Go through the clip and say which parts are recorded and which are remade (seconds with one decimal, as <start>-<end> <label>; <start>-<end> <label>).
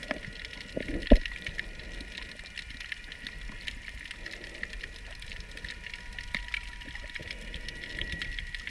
0.0-8.7 recorded